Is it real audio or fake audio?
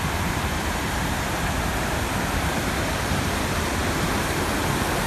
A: fake